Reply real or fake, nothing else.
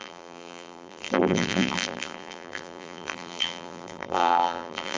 fake